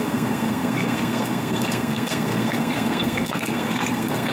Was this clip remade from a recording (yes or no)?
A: yes